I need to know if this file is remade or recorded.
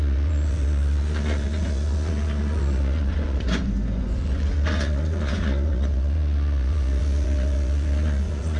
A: remade